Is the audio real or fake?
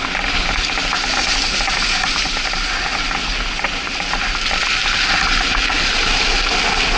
real